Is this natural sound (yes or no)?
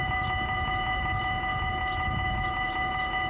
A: no